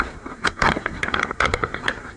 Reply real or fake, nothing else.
fake